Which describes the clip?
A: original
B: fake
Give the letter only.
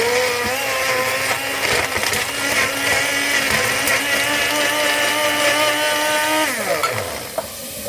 A